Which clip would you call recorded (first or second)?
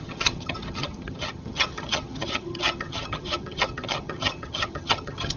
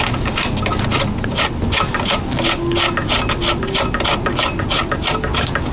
second